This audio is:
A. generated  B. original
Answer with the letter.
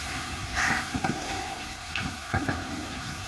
A